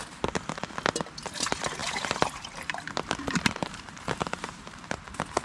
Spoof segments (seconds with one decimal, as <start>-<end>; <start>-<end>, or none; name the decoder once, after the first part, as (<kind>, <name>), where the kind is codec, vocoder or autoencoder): 1.8-5.0 (vocoder, BigVGAN v2)